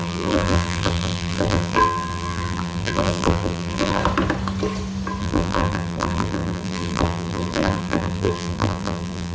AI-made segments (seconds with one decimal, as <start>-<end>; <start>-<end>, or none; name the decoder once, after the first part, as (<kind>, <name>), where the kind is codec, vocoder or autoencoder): 0.0-4.0 (vocoder, BigVGAN v2); 5.2-9.3